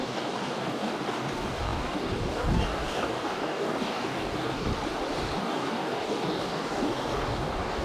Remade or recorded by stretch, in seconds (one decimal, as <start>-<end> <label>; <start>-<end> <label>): 0.0-4.7 remade; 4.7-5.4 recorded; 5.4-7.8 remade